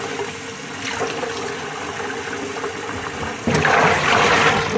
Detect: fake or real real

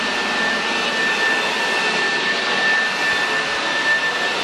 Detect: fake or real real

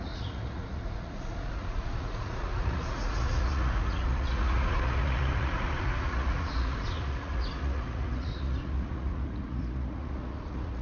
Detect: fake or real fake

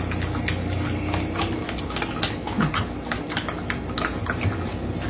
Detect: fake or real real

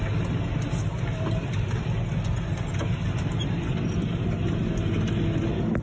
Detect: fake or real real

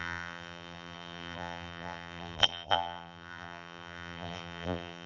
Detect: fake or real fake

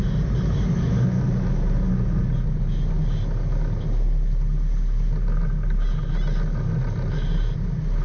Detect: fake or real real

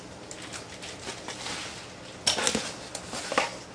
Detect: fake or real real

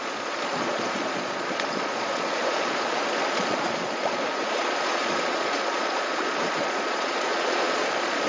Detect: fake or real fake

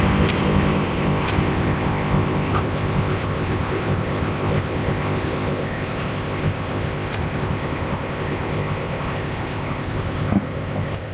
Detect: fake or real fake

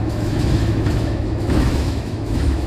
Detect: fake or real fake